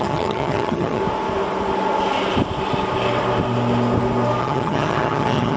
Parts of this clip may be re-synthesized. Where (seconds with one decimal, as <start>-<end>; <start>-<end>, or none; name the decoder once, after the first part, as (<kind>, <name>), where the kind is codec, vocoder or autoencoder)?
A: 0.0-1.0 (vocoder, HiFi-GAN); 4.4-5.6